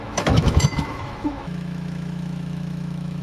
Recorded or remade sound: remade